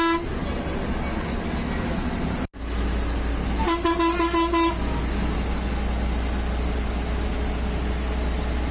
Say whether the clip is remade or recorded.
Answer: recorded